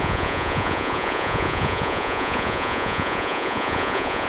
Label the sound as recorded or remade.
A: remade